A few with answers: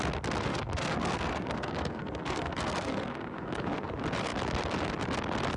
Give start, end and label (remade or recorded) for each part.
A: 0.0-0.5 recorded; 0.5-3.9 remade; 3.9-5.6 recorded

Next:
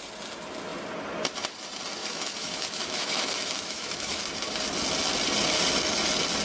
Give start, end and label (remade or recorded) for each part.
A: 0.0-2.0 recorded; 2.0-4.2 remade; 4.2-6.4 recorded

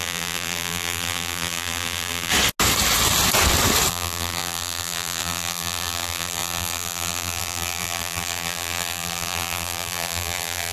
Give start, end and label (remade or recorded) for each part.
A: 0.0-2.3 remade; 2.3-3.9 recorded; 3.9-10.7 remade

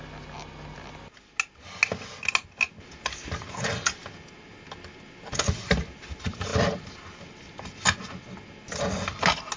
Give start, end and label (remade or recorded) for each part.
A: 0.0-9.6 recorded

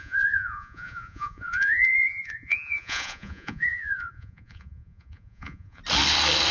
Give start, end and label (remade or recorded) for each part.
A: 0.0-5.8 remade; 5.8-6.5 recorded

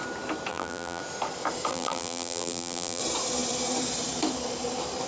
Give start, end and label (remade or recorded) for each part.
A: 0.0-0.5 recorded; 0.5-1.0 remade; 1.0-1.7 recorded; 1.7-3.0 remade; 3.0-5.1 recorded